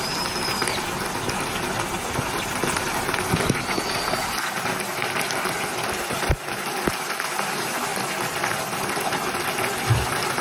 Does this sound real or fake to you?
real